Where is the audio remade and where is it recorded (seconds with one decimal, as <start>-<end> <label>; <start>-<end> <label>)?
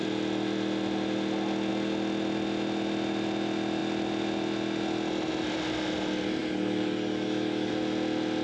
0.0-6.4 recorded; 6.4-7.7 remade; 7.7-8.4 recorded